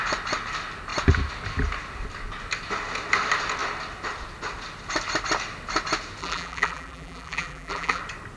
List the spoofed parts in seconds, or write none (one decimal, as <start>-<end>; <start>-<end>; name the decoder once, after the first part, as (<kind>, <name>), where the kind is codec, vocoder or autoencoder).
6.2-8.0 (vocoder, BigVGAN v2)